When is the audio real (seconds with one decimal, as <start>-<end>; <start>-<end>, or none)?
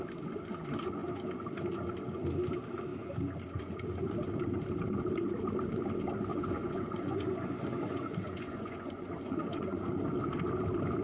0.0-6.3; 9.9-11.0